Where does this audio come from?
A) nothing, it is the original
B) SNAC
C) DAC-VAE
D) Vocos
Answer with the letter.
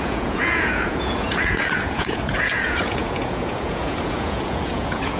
D